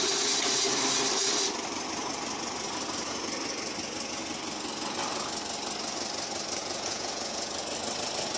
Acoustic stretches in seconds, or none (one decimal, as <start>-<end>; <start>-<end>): 0.0-6.6; 7.5-8.4